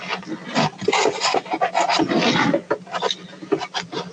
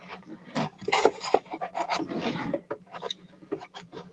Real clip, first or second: first